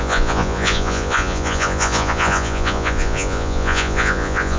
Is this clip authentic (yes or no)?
no